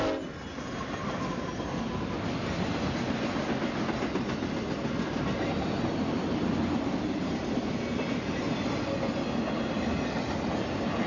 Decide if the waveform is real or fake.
real